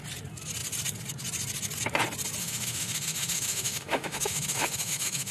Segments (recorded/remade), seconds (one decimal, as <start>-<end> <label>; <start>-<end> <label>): 0.0-2.4 recorded; 2.4-5.3 remade